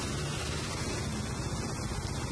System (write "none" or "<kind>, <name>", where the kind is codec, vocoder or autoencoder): none